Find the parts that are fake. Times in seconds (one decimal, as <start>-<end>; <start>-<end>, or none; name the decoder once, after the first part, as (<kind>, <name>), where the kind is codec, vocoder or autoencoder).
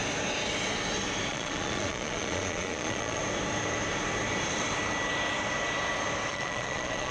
1.3-3.2 (vocoder, Vocos); 6.3-7.1